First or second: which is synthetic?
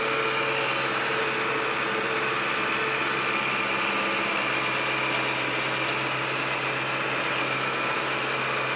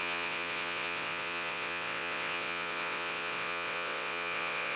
second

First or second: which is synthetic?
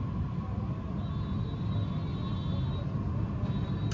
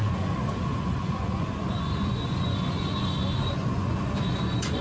second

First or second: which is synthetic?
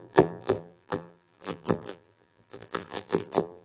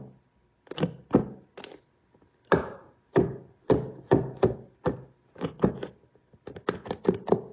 first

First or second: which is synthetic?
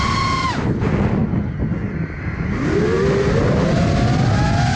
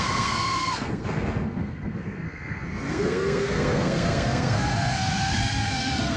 second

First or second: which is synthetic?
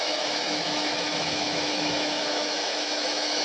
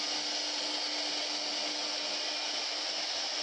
first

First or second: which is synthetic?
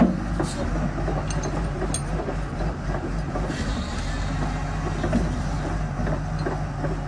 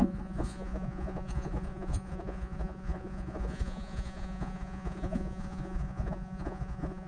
second